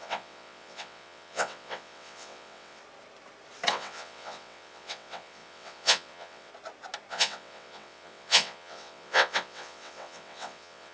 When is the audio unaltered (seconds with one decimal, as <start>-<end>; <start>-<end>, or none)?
2.8-3.7; 6.5-7.1